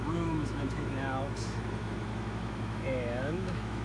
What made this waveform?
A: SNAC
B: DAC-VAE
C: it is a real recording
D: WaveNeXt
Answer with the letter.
B